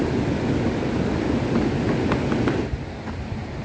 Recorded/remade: recorded